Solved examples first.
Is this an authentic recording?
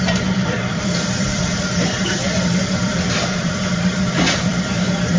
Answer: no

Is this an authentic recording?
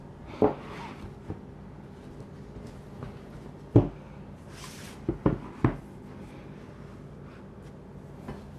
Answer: yes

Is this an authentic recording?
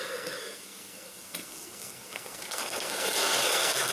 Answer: no